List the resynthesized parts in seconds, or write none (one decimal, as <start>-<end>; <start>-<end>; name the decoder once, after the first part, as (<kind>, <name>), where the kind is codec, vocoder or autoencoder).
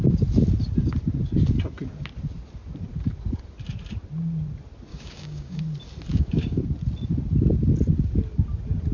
4.9-5.6 (codec, DAC); 6.1-6.6